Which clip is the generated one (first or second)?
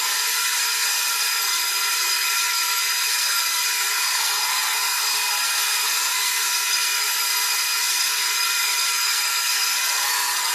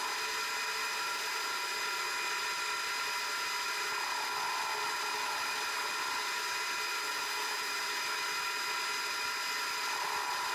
first